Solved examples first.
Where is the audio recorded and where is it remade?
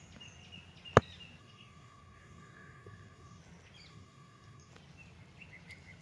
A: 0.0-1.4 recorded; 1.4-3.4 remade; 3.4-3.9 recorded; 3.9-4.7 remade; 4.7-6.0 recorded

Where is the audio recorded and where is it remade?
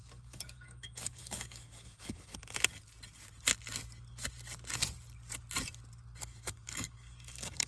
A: 0.0-2.3 remade; 2.3-6.2 recorded; 6.2-7.7 remade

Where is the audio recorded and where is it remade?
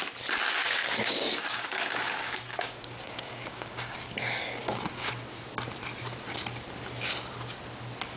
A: 0.0-0.6 recorded; 0.6-5.1 remade; 5.1-8.2 recorded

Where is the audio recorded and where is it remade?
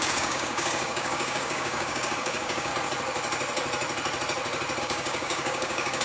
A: 0.0-2.7 remade; 2.7-4.8 recorded; 4.8-6.0 remade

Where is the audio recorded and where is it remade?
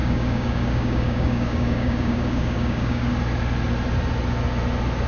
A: 0.0-3.1 remade; 3.1-5.1 recorded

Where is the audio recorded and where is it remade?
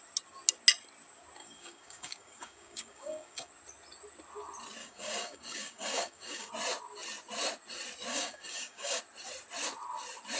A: 0.0-1.4 recorded; 1.4-3.5 remade; 3.5-4.8 recorded; 4.8-6.5 remade; 6.5-8.1 recorded; 8.1-9.0 remade; 9.0-10.4 recorded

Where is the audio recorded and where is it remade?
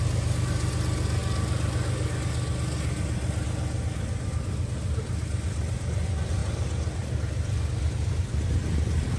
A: 0.0-9.2 recorded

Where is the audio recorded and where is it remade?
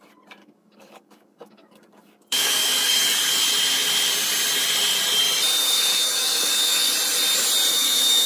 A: 0.0-0.4 recorded; 0.4-3.4 remade; 3.4-5.6 recorded; 5.6-6.9 remade; 6.9-7.7 recorded; 7.7-8.3 remade